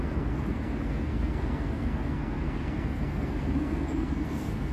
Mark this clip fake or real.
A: fake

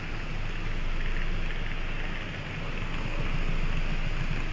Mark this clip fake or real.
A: real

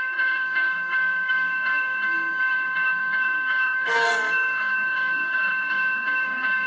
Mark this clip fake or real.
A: fake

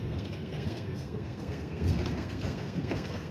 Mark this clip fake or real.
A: fake